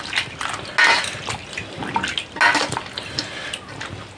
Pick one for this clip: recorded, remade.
recorded